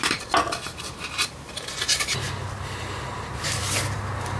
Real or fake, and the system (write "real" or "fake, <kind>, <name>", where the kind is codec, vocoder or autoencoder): fake, vocoder, BigVGAN v2